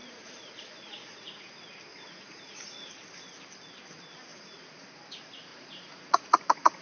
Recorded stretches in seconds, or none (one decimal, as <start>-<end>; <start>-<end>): 1.3-1.9; 2.9-4.3; 5.0-5.5

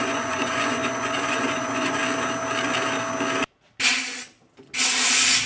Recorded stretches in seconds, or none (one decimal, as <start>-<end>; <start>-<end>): 2.0-5.5

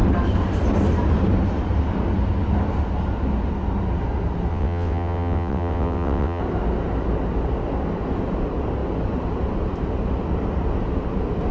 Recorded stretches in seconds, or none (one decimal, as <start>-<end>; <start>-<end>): 0.0-4.5; 6.4-11.5

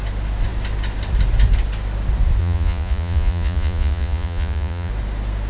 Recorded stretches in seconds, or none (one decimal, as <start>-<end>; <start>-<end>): 0.0-2.4; 4.9-5.5

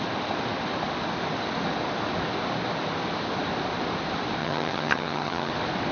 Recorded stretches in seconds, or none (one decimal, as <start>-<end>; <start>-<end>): 0.0-4.4; 5.5-5.9

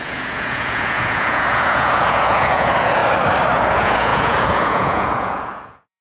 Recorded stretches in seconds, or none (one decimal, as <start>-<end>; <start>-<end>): 3.0-3.6